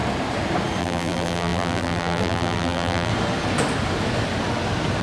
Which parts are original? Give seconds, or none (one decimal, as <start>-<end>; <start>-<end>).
0.0-0.8; 3.1-5.0